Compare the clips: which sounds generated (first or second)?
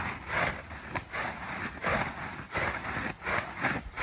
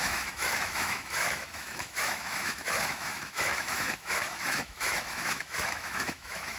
second